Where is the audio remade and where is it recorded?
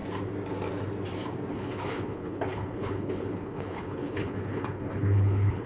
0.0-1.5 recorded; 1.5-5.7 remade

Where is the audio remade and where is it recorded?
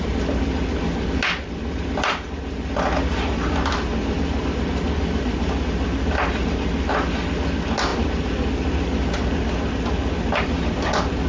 0.0-11.3 recorded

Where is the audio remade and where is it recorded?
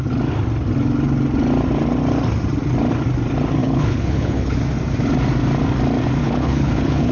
0.0-3.6 recorded; 3.6-4.6 remade; 4.6-6.2 recorded; 6.2-7.1 remade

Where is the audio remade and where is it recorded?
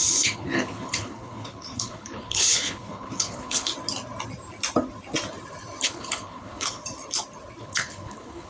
0.0-3.7 remade; 3.7-5.8 recorded; 5.8-6.8 remade; 6.8-7.6 recorded; 7.6-8.5 remade